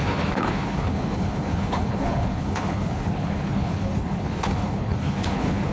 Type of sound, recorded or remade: remade